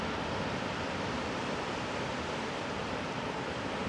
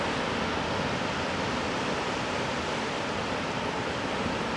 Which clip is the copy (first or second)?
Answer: first